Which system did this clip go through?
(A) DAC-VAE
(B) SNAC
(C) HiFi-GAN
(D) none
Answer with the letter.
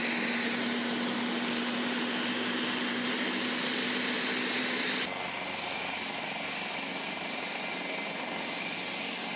D